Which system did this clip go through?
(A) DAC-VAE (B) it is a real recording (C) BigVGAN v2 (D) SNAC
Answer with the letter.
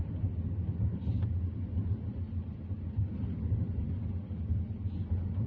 B